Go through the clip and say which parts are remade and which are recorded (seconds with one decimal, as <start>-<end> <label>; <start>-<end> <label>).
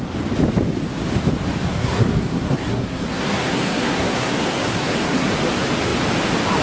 0.0-1.7 recorded; 1.7-5.3 remade; 5.3-6.6 recorded